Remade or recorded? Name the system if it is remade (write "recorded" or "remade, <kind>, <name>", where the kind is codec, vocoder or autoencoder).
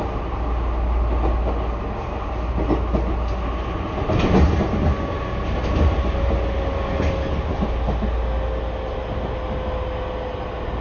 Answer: recorded